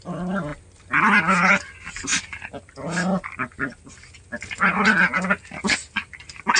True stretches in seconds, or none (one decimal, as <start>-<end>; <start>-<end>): 0.0-6.6